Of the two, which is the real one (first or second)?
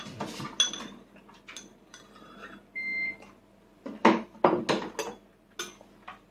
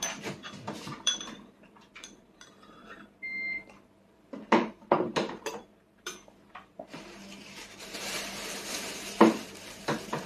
first